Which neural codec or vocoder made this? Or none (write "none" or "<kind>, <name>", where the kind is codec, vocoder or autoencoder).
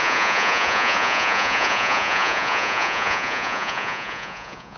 vocoder, Vocos